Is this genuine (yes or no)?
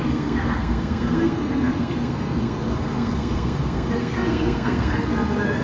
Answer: no